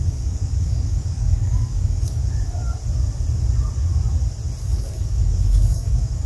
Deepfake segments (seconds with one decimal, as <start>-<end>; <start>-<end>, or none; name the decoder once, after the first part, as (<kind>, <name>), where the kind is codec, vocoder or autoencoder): 0.0-2.2 (codec, DAC); 4.6-6.3